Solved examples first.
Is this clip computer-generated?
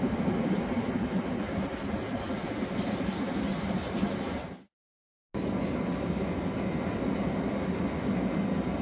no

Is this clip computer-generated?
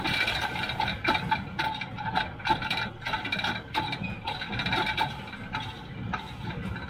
no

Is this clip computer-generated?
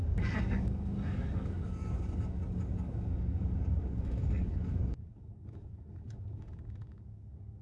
yes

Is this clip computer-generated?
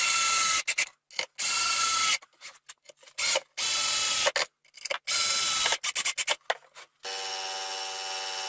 no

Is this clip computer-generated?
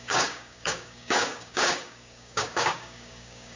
yes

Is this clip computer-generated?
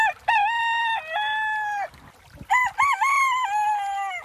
no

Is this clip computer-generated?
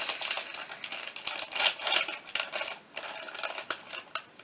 no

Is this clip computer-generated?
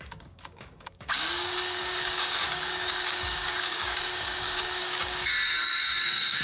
yes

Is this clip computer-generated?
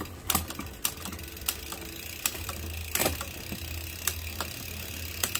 no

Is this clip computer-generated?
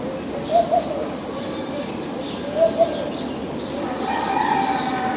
no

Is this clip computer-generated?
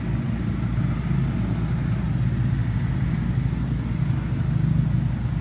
no